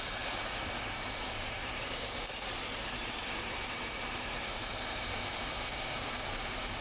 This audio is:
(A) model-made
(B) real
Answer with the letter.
A